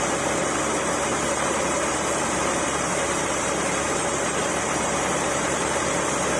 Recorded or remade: remade